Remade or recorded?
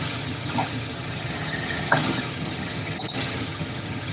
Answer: remade